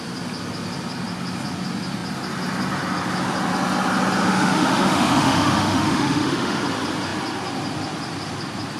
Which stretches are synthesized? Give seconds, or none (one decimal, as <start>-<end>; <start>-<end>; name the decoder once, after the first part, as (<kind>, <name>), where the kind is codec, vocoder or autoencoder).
4.2-6.6 (autoencoder, DAC-VAE)